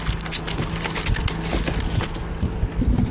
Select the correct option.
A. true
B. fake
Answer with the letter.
A